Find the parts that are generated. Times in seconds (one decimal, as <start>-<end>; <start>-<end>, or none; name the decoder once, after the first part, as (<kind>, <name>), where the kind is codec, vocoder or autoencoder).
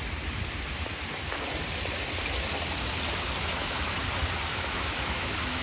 3.4-4.0 (autoencoder, DAC-VAE); 4.5-5.6